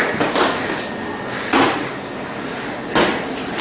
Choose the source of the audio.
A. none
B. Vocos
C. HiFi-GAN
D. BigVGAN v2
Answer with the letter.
A